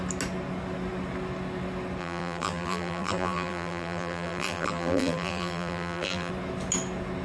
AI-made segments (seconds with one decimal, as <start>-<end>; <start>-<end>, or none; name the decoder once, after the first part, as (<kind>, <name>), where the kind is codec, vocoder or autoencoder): 2.0-6.3 (vocoder, BigVGAN v2)